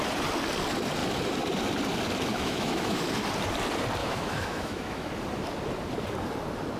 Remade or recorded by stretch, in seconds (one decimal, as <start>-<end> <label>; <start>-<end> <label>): 0.0-2.3 recorded; 2.3-3.0 remade; 3.0-4.0 recorded; 4.0-5.1 remade; 5.1-6.8 recorded